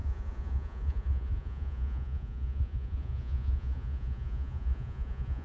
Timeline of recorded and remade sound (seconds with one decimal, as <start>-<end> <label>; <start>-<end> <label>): 0.0-5.4 remade